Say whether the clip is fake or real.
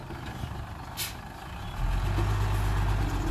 real